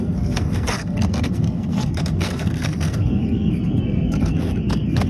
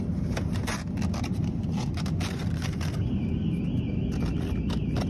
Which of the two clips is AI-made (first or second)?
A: first